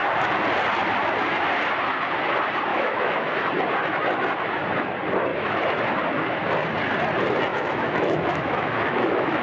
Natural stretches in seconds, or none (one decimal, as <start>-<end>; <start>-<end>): 0.0-2.7; 3.5-5.3; 5.9-7.5